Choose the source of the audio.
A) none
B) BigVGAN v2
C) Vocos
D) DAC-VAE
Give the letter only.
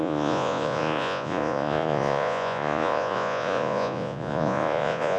C